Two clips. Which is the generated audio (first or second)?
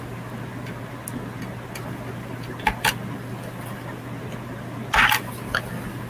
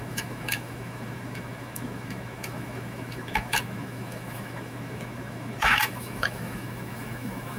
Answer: second